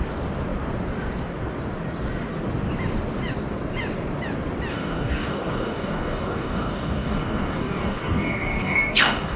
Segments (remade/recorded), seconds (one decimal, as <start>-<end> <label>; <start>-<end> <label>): 0.0-4.7 recorded; 4.7-9.4 remade